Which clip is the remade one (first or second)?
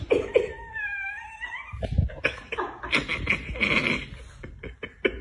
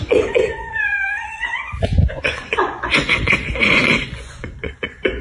second